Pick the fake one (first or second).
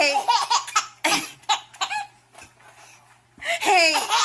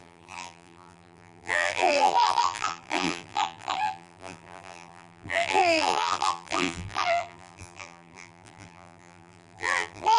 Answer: second